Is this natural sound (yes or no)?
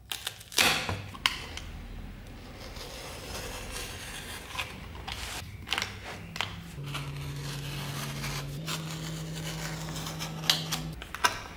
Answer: yes